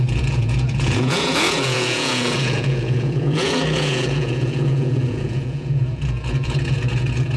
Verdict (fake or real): fake